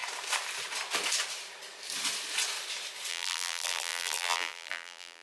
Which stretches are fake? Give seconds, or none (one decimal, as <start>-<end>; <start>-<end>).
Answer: 3.1-5.2